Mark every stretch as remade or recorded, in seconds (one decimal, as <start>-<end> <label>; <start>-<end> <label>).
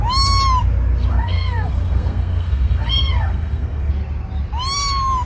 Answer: 0.0-1.1 recorded; 1.1-3.9 remade; 3.9-5.3 recorded